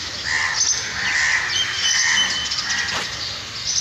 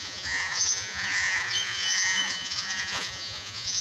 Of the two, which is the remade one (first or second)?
second